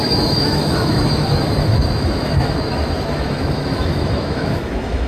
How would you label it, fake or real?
fake